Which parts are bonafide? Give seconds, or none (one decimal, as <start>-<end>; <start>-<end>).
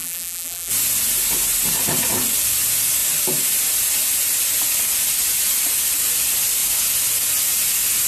0.7-8.1